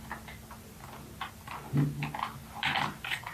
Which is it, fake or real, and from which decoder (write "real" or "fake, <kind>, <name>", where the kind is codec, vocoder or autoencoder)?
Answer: real